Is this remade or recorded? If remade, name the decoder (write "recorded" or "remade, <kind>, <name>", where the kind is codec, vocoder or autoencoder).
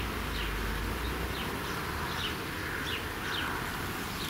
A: recorded